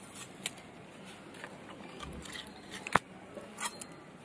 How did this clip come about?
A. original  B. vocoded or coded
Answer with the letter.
A